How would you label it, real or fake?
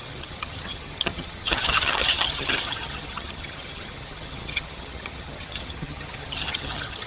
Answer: fake